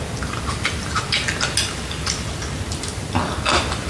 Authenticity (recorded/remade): recorded